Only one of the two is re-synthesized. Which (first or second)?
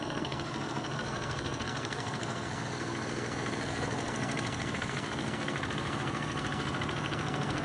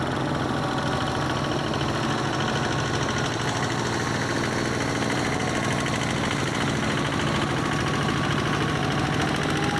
first